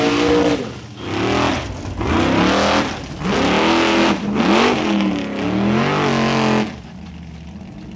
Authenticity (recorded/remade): recorded